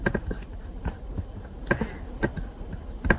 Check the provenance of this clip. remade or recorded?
recorded